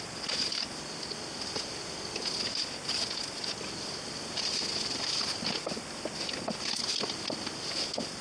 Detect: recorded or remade recorded